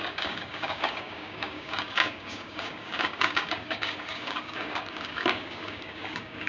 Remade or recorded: remade